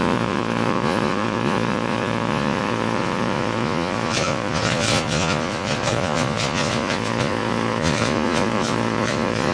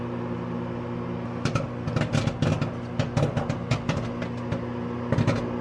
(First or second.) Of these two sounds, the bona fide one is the second